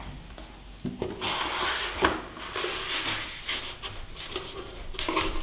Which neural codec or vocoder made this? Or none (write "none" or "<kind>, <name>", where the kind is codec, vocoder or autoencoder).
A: none